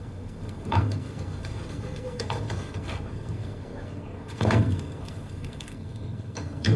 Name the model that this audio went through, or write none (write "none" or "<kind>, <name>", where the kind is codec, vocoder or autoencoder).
codec, SNAC